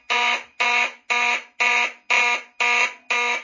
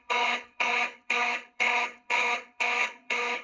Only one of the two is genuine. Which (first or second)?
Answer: first